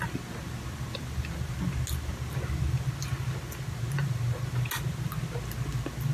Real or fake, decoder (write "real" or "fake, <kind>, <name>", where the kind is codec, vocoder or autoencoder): real